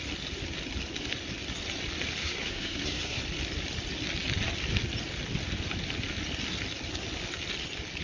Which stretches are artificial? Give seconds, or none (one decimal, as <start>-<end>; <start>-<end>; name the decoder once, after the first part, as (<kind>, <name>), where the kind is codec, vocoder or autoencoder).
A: 2.2-3.2 (codec, SNAC)